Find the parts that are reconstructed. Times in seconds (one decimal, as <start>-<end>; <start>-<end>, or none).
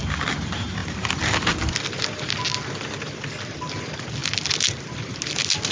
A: 0.8-1.7